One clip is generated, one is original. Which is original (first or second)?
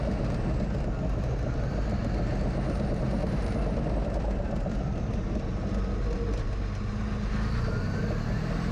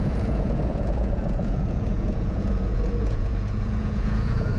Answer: first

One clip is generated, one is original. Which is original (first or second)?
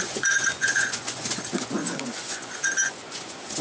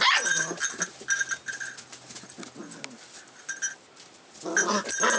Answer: second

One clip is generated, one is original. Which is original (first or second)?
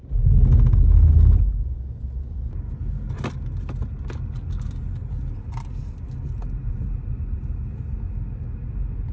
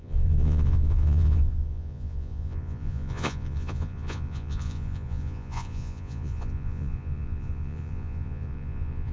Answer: first